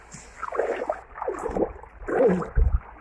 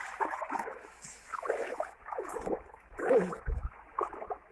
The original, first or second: first